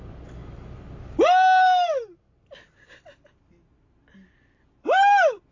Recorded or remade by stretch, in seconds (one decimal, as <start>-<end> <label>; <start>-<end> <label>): 0.0-5.5 recorded